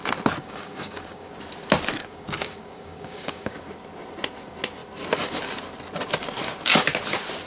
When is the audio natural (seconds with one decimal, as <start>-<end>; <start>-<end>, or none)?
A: 0.0-0.4; 1.3-2.0; 3.6-7.5